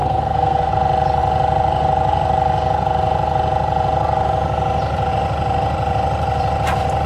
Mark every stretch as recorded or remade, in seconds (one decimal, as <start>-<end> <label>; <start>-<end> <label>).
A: 0.0-0.7 remade; 0.7-7.1 recorded